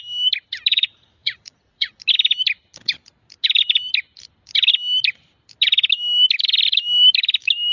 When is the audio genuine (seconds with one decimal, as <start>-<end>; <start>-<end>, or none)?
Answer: 0.0-0.7; 2.0-7.7